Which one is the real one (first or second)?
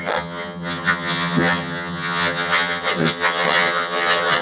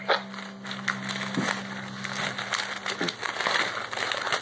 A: second